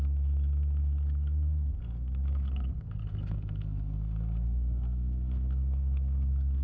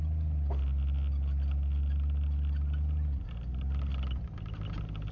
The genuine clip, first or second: second